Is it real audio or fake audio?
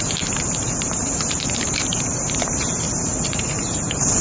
fake